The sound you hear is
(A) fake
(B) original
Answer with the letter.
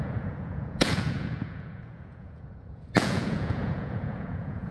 A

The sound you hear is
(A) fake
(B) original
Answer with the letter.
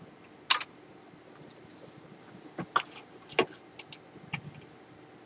B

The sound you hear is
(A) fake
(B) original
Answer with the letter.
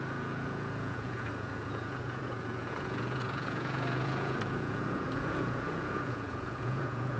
A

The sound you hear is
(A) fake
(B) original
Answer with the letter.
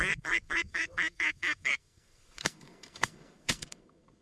A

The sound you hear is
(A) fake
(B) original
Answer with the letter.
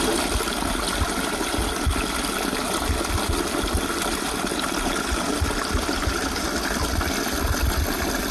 B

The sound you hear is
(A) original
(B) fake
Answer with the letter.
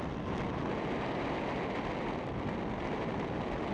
A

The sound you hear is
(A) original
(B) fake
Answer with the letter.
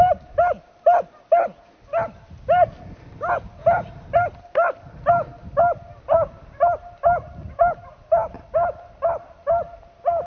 A